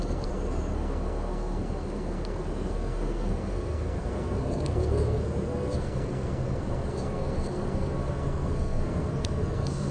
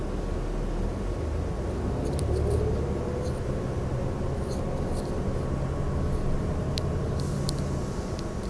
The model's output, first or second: first